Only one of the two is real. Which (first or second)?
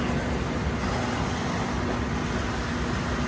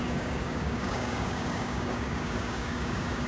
first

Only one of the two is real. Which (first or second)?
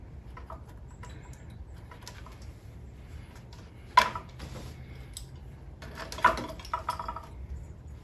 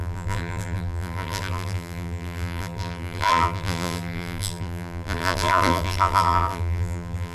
first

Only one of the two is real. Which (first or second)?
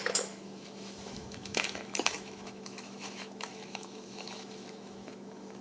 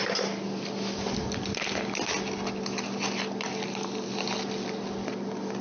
second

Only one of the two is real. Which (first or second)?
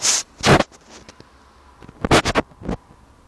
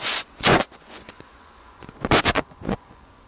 first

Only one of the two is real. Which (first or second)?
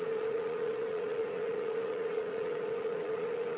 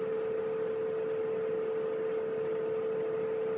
second